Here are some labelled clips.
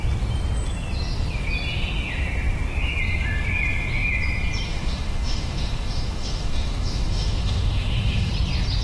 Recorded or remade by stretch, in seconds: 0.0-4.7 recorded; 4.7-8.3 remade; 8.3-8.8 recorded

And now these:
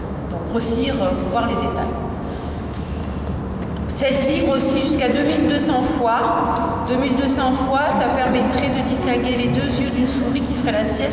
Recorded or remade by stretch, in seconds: 0.0-1.2 remade; 1.2-2.1 recorded; 2.1-3.0 remade; 3.0-4.1 recorded; 4.1-5.4 remade; 5.4-10.0 recorded; 10.0-11.1 remade

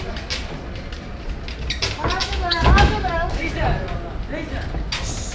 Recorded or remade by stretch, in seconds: 0.0-2.2 recorded; 2.2-3.5 remade; 3.5-5.3 recorded

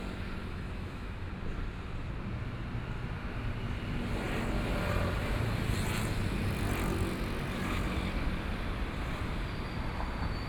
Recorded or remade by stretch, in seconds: 0.0-0.4 recorded; 0.4-1.3 remade; 1.3-10.5 recorded

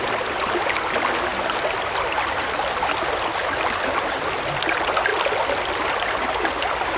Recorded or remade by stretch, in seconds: 0.0-7.0 recorded

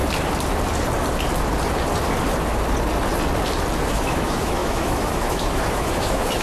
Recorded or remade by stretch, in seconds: 0.0-3.8 recorded; 3.8-6.4 remade

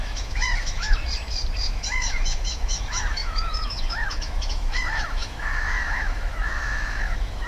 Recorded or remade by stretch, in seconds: 0.0-1.0 remade; 1.0-1.6 recorded; 1.6-7.5 remade